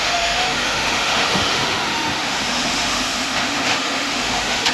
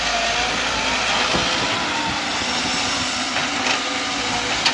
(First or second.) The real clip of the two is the second